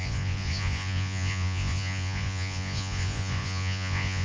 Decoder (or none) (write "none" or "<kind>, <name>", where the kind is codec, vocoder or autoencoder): vocoder, Vocos